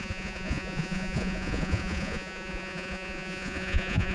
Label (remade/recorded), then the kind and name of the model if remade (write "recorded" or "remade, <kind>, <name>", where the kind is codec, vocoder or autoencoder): remade, vocoder, Vocos